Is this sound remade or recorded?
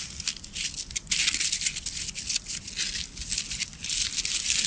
recorded